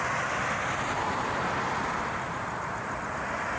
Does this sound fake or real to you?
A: fake